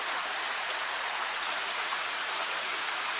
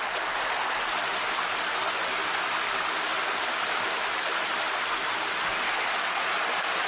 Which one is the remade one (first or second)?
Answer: first